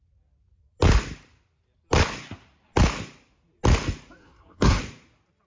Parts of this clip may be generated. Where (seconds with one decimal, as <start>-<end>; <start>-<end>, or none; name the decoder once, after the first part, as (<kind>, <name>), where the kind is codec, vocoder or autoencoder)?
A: 4.2-4.8 (codec, SNAC)